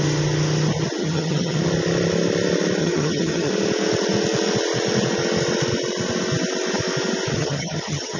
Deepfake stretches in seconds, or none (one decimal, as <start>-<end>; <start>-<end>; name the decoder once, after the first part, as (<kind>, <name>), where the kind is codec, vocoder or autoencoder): 1.0-1.6 (vocoder, HiFi-GAN); 2.8-3.5; 7.4-8.2